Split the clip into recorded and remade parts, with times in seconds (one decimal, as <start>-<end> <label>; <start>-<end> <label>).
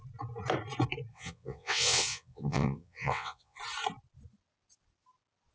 0.0-1.1 recorded; 1.1-3.6 remade; 3.6-5.5 recorded